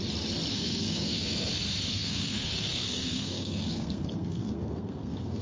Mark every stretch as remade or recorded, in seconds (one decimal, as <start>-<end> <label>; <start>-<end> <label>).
0.0-0.5 recorded; 0.5-1.5 remade; 1.5-1.9 recorded; 1.9-5.4 remade

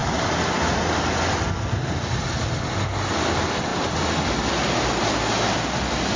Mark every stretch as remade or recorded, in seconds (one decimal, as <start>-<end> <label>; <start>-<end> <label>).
0.0-6.2 recorded